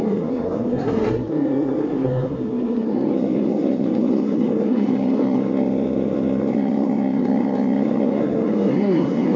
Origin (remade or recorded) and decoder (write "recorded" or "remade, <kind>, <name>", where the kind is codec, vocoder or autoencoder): remade, codec, SNAC